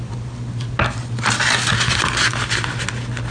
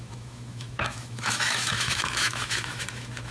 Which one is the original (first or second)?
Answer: first